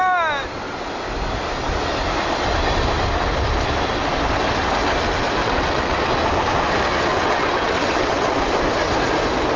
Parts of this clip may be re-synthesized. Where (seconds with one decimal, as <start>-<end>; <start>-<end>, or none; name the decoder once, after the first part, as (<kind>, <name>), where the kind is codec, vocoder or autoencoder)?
5.4-6.0 (vocoder, WaveNeXt); 7.1-8.4

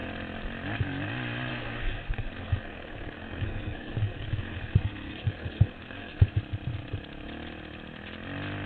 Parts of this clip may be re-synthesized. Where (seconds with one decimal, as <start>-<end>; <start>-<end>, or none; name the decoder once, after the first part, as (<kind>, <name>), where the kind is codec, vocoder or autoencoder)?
1.5-6.4 (codec, SNAC)